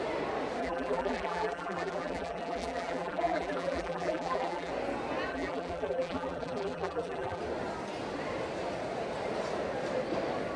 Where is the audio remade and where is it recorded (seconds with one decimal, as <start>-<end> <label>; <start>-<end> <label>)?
0.0-0.6 recorded; 0.6-4.7 remade; 4.7-5.3 recorded; 5.3-7.4 remade; 7.4-10.6 recorded